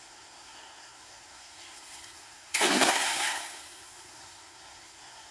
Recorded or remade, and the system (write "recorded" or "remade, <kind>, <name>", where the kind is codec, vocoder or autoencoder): remade, codec, SNAC